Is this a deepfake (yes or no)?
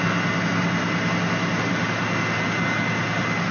no